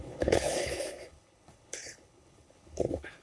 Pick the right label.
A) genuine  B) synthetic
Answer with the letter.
B